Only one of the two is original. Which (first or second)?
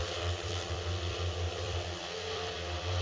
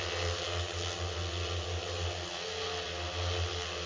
second